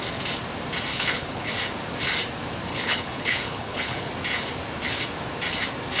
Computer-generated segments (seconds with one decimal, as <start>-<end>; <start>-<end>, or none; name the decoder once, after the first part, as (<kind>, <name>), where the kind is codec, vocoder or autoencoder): 0.9-1.5 (codec, HILCodec); 2.7-4.1